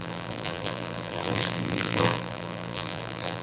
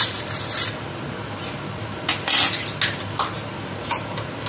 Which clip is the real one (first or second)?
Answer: second